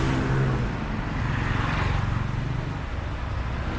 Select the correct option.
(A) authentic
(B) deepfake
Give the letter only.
A